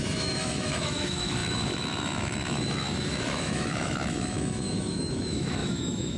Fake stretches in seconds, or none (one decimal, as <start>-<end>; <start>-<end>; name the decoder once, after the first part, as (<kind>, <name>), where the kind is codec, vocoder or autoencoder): 0.0-6.2 (autoencoder, DAC-VAE)